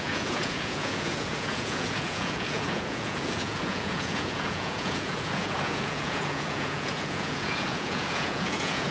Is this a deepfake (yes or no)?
yes